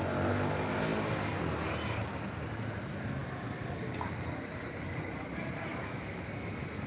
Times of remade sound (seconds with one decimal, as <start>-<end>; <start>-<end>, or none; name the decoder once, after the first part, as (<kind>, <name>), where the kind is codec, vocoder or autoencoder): 5.7-6.3 (autoencoder, DAC-VAE)